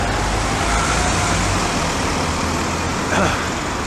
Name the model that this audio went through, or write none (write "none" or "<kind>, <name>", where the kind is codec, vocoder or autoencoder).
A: none